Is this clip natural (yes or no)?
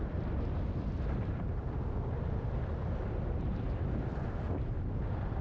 yes